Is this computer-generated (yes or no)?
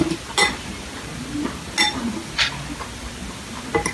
no